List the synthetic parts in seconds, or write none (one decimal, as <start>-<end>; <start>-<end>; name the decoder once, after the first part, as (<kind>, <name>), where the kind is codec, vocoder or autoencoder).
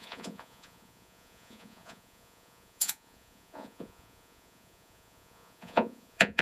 0.0-6.4 (vocoder, Vocos)